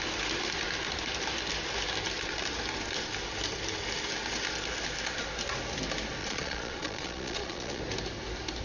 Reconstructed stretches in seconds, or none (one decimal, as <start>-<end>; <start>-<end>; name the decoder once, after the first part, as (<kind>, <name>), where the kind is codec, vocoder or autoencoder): 6.2-7.8 (vocoder, Vocos)